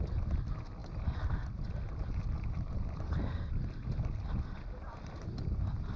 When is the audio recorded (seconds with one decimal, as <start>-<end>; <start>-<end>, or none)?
0.0-6.0